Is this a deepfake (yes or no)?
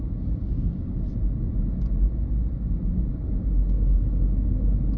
no